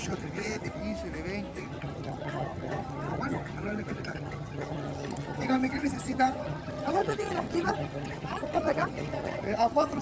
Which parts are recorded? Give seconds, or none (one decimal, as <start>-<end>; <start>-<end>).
0.8-1.6